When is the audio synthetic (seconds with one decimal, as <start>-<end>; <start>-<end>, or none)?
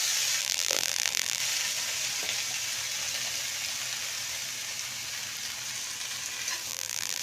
0.4-1.4; 6.7-7.2